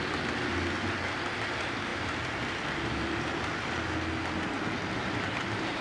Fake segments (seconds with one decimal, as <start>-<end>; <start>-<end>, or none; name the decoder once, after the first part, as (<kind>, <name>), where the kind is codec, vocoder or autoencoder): none